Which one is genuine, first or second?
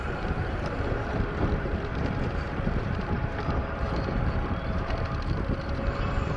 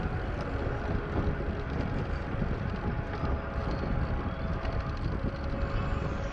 second